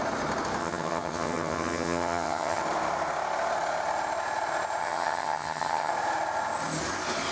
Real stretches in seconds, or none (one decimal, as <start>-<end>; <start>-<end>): 0.0-0.6; 2.6-4.8; 5.9-7.3